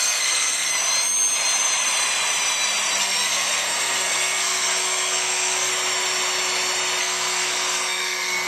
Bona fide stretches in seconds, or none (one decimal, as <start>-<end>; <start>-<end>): 0.7-3.0; 5.7-7.0